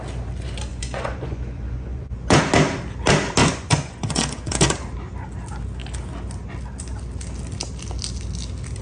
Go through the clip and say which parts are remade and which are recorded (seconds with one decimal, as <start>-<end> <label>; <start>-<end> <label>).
0.0-0.7 recorded; 0.7-2.4 remade; 2.4-3.4 recorded; 3.4-4.7 remade; 4.7-8.8 recorded